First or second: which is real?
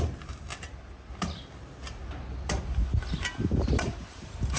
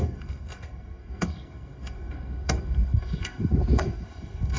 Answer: first